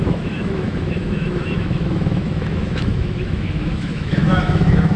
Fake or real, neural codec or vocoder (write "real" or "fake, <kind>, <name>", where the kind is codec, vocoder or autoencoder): fake, autoencoder, DAC-VAE